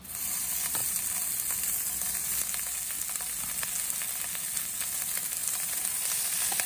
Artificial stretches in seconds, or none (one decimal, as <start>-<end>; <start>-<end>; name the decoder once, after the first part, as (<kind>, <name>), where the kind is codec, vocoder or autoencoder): 0.0-0.8 (vocoder, BigVGAN v2); 4.8-6.7